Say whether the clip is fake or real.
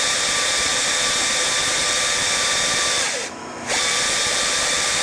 fake